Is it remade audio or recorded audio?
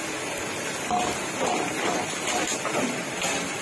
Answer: recorded